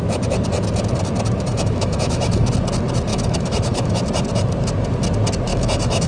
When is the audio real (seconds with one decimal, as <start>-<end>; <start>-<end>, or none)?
0.0-1.5; 2.5-3.1; 4.0-5.5

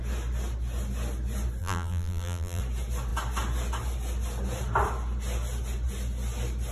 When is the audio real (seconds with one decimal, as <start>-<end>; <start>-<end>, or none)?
0.0-1.6; 2.6-6.7

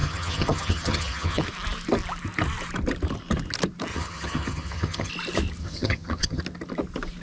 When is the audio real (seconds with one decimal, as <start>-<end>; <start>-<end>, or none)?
1.4-3.9; 5.1-5.6; 6.4-7.2

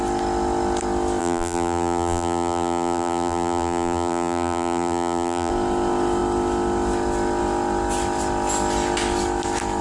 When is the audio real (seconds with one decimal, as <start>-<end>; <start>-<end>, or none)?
0.0-1.2; 5.5-9.8

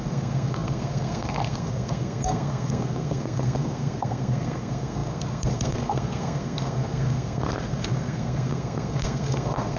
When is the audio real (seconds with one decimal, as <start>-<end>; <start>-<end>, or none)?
none

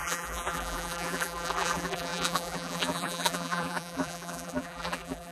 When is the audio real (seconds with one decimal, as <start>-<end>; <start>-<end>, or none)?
none

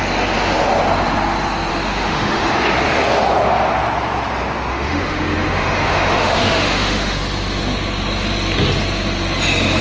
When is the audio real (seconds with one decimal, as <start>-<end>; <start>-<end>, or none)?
0.0-1.7; 2.5-4.7; 7.2-9.8

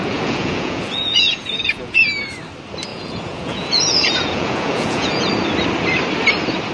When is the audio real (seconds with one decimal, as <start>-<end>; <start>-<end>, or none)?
2.0-2.9; 5.3-6.7